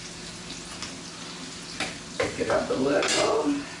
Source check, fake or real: real